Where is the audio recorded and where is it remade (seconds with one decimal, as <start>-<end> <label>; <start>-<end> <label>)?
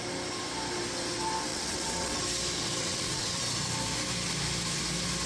0.0-1.5 recorded; 1.5-2.2 remade; 2.2-2.8 recorded; 2.8-3.4 remade; 3.4-5.3 recorded